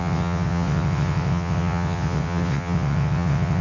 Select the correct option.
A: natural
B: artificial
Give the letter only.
B